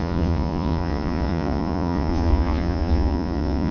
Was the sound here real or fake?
fake